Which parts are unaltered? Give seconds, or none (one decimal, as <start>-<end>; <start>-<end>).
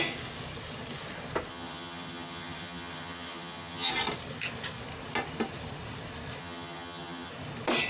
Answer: 0.0-1.5; 3.9-6.4; 7.3-7.9